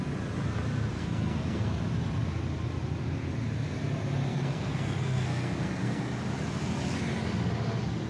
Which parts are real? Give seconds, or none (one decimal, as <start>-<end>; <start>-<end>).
0.0-0.9; 1.8-4.3; 6.0-8.1